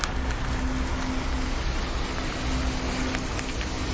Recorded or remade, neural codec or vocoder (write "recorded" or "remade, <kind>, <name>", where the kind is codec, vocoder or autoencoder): recorded